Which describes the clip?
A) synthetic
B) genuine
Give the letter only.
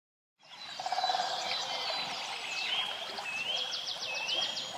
B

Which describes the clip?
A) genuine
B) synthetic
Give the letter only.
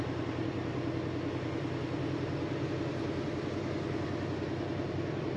B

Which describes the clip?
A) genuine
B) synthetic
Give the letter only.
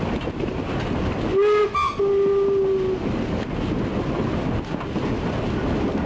A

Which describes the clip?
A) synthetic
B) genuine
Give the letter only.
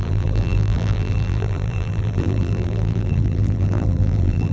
A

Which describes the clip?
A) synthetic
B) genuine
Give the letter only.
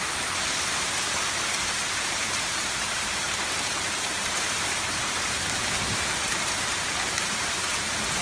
A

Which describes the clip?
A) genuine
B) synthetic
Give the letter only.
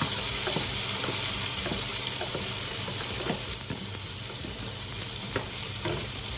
B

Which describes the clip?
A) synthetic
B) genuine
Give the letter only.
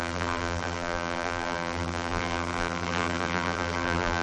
A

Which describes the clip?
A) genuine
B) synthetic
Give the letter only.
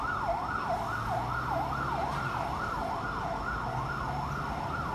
A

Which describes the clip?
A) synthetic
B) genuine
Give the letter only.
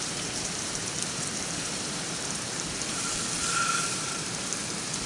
A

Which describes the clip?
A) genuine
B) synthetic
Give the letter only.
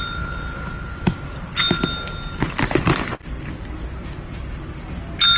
A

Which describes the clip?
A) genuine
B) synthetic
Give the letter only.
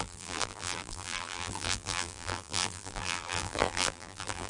B